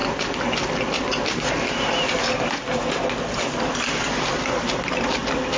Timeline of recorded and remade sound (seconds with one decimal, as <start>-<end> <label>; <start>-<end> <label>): 0.0-5.6 recorded